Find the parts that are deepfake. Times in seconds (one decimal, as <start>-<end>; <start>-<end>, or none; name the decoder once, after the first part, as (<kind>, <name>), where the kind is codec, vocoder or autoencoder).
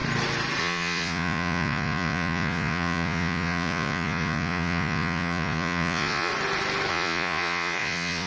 0.6-6.3 (vocoder, Vocos); 6.9-8.3